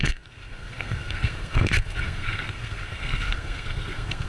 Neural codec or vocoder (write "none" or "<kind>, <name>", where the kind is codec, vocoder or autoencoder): codec, SNAC